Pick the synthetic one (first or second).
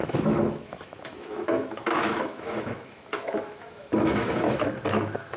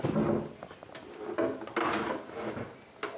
first